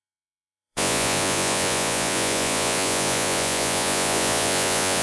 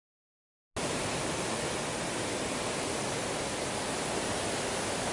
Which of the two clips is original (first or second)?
second